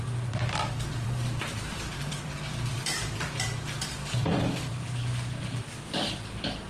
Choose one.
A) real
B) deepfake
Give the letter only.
B